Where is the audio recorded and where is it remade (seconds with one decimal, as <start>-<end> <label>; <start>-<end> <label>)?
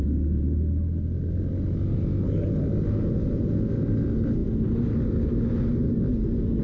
0.0-6.6 recorded